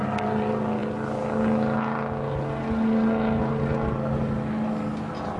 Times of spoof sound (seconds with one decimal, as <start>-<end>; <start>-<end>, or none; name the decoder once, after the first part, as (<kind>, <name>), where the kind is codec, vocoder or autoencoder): none